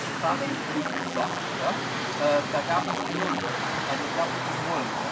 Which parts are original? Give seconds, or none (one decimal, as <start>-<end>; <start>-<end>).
0.0-0.8; 1.4-2.8; 3.5-5.1